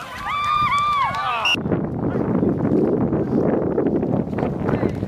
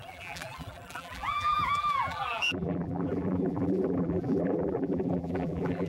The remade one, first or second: second